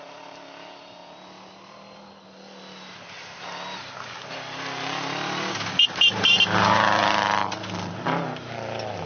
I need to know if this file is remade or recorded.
recorded